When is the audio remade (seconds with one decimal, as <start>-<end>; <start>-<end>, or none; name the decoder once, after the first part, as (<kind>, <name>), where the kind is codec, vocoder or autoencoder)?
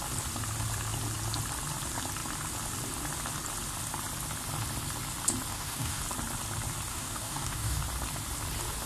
5.5-6.0 (codec, DAC); 6.9-7.8